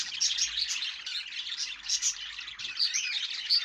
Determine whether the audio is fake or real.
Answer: real